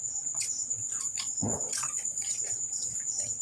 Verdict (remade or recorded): remade